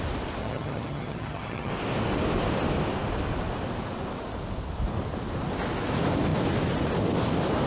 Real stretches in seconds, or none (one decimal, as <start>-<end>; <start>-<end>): 0.0-0.4; 1.7-7.7